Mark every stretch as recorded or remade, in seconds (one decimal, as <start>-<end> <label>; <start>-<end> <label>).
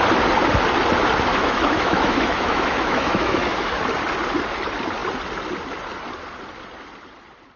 0.0-1.3 recorded; 1.3-3.8 remade; 3.8-7.6 recorded